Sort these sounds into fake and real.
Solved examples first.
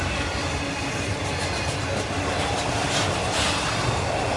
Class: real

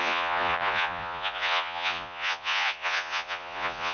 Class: fake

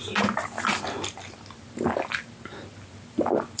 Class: real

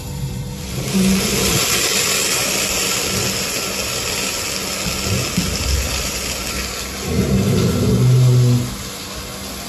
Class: real